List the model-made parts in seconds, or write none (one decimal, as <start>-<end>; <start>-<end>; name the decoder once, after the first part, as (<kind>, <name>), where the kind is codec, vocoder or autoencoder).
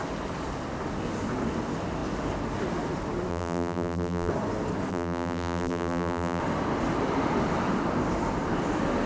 3.3-4.3 (vocoder, BigVGAN v2); 4.9-6.4